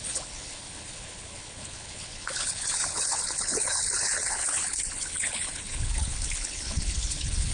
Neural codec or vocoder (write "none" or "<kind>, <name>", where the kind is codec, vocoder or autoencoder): codec, HILCodec